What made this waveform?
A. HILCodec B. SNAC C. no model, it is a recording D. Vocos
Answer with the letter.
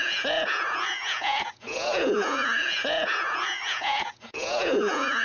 D